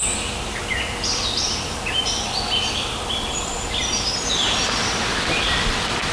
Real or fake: real